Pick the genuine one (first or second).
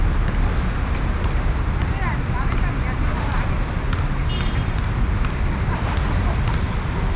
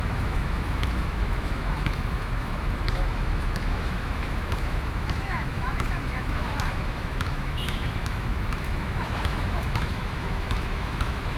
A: first